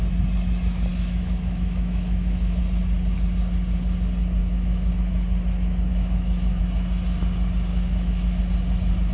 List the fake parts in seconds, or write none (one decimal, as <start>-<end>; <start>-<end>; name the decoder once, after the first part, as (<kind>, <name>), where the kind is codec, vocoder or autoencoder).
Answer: 0.9-2.6 (autoencoder, DAC-VAE); 4.4-4.9; 5.9-6.6; 7.7-8.4